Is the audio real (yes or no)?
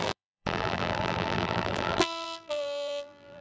no